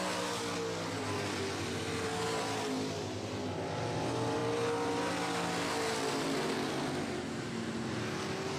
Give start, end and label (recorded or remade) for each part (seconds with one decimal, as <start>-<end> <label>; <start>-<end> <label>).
0.0-8.6 recorded